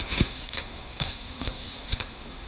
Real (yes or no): no